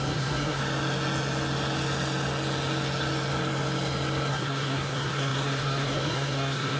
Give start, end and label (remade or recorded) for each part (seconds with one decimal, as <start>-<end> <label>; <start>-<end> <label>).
0.0-0.6 remade; 0.6-4.3 recorded; 4.3-6.8 remade